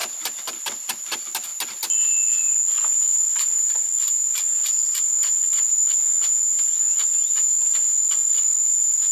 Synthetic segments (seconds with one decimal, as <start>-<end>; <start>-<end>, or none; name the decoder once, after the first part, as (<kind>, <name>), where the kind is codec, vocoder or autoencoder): none